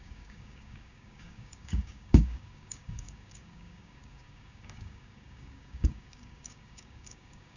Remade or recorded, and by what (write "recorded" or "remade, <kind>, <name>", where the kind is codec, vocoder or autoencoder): remade, codec, DAC